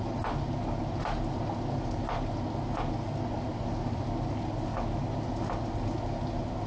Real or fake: real